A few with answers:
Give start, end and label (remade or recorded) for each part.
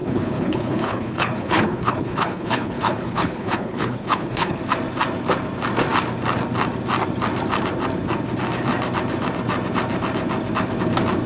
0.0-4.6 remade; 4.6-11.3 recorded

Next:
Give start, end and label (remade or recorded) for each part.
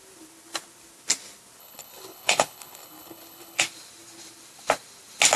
0.0-1.6 recorded; 1.6-3.6 remade; 3.6-5.4 recorded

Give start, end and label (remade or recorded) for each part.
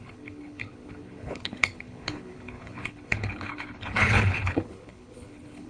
0.0-5.7 remade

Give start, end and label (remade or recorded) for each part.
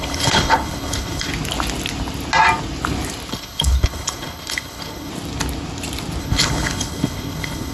0.0-1.3 remade; 1.3-3.3 recorded; 3.3-5.1 remade; 5.1-6.2 recorded; 6.2-7.7 remade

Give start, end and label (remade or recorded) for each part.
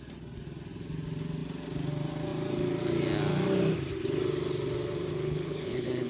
0.0-5.1 recorded; 5.1-6.1 remade